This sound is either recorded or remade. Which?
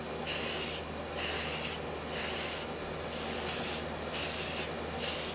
recorded